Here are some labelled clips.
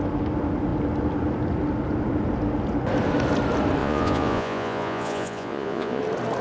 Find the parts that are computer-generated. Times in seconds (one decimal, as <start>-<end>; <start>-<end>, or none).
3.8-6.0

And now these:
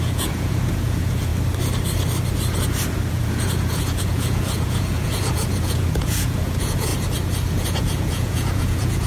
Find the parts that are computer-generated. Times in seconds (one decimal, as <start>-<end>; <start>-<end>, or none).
0.0-1.3; 3.1-6.9; 7.5-9.1

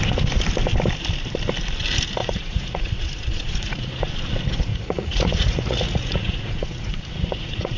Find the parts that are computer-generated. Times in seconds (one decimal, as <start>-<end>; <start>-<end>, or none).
2.2-4.1; 4.7-7.8

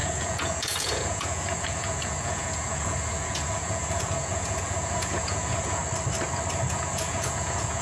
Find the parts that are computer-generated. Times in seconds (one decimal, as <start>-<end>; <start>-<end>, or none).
0.0-5.8; 6.7-7.8

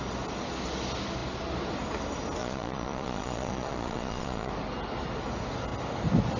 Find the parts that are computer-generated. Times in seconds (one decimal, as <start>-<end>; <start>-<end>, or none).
2.4-4.5

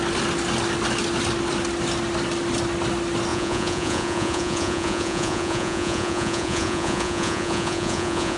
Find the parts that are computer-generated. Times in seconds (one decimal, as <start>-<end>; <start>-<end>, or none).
3.3-8.4